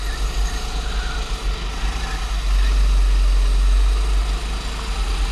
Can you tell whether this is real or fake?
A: real